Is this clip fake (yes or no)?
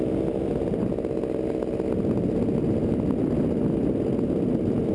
no